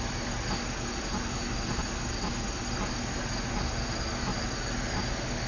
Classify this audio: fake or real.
real